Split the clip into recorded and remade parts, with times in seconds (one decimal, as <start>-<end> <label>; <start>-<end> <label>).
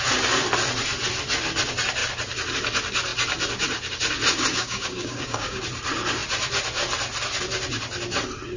0.0-4.5 recorded; 4.5-5.6 remade; 5.6-8.6 recorded